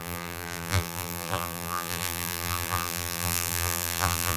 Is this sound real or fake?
fake